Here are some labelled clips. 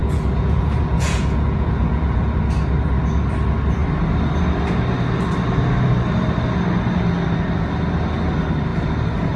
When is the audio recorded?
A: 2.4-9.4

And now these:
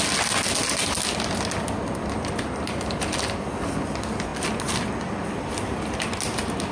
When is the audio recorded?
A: 0.0-6.7

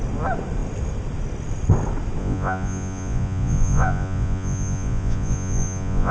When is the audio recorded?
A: 0.0-2.2

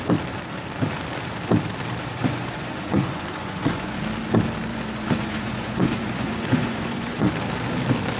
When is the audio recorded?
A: 0.0-2.0; 4.0-4.7; 7.3-8.2

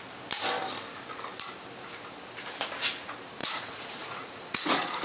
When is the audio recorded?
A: 0.0-3.4

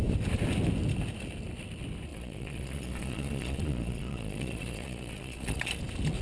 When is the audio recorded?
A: 0.0-2.1; 5.8-6.2